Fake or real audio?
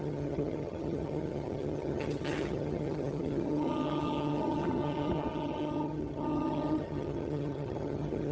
fake